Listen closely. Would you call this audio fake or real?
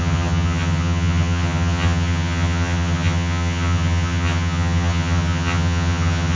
fake